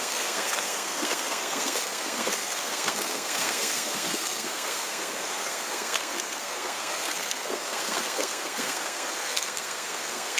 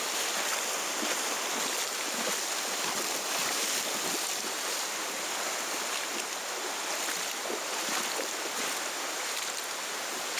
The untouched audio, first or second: second